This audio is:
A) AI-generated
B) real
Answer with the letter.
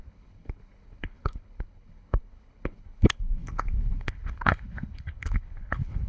A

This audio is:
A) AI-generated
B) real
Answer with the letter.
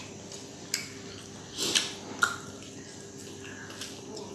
B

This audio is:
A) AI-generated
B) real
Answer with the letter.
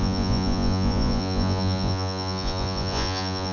A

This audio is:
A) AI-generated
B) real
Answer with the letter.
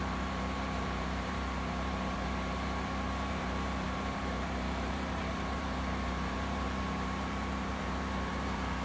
A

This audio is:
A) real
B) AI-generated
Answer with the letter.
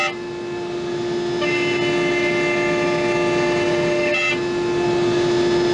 A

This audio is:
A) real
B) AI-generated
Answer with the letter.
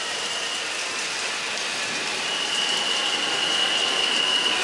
A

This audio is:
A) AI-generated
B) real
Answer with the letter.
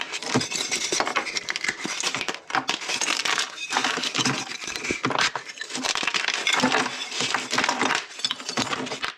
B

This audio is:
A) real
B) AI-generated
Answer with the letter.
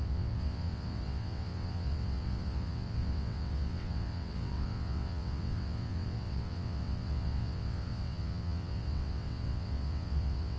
B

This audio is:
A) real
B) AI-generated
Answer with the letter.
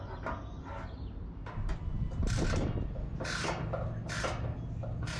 A